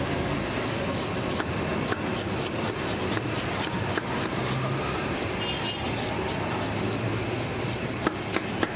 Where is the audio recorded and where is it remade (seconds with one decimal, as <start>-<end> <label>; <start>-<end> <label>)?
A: 0.0-8.8 recorded